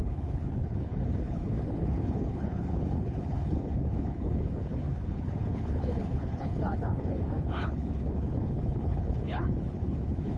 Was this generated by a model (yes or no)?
yes